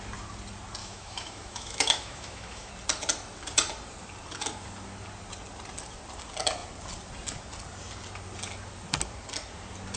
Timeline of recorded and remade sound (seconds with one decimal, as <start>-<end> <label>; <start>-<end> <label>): 0.0-0.8 recorded; 0.8-2.7 remade; 2.7-10.0 recorded